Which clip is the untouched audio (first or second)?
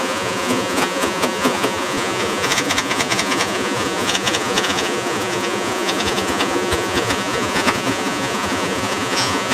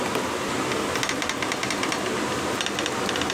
second